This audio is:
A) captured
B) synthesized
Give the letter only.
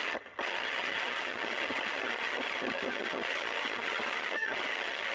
B